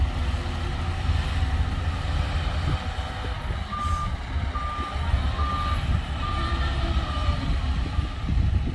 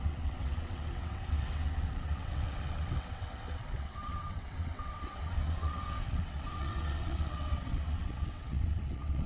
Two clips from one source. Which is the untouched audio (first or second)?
first